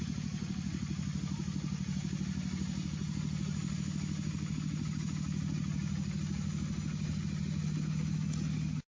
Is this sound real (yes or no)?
yes